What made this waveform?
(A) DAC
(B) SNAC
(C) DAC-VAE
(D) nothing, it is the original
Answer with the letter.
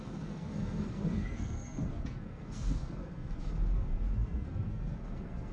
B